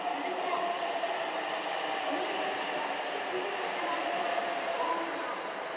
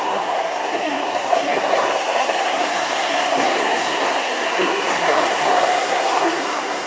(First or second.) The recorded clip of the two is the first